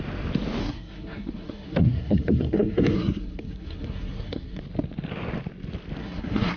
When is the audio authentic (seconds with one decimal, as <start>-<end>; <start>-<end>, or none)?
0.0-0.6; 4.6-6.0